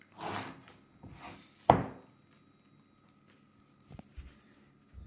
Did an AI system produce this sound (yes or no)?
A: no